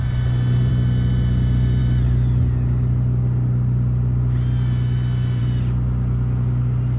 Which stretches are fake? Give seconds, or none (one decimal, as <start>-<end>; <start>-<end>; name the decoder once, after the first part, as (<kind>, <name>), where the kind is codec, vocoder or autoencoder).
none